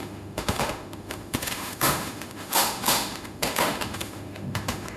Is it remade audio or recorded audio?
remade